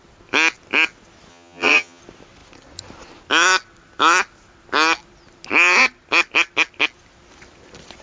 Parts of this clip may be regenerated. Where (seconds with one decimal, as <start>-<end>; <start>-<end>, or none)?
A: 1.3-2.0